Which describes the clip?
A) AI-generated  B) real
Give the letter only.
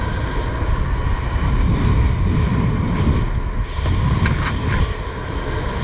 B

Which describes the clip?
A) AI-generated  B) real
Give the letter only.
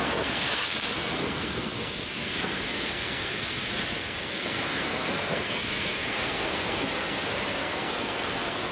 A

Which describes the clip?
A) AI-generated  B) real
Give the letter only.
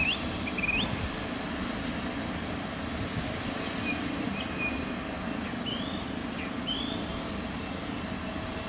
B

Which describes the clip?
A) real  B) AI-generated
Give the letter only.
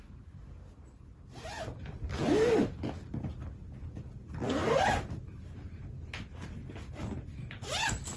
A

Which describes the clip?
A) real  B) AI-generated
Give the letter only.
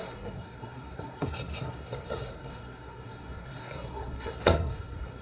B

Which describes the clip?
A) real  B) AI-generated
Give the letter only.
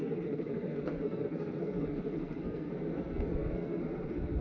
B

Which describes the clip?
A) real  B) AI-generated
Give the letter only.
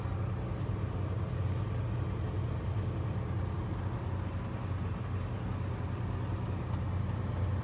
A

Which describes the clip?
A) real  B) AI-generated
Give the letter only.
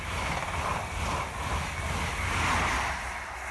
A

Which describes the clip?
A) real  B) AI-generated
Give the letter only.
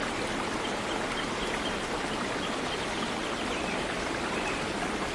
A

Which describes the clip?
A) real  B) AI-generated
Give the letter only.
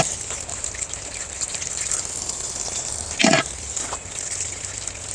A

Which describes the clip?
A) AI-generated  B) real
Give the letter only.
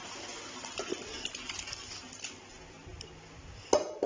B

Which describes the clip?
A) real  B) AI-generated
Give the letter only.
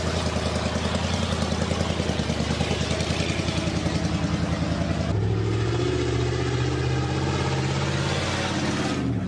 A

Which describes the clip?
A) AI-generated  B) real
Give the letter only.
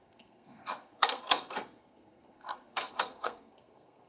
A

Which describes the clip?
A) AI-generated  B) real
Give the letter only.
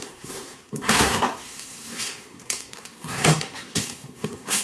A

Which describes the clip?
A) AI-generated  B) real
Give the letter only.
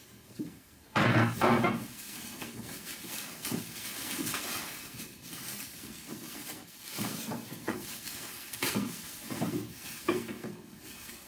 A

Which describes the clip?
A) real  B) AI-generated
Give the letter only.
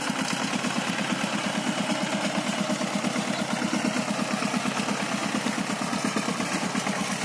A